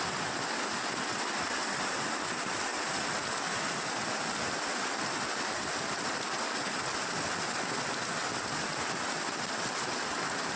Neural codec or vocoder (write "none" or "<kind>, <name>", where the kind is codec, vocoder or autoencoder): none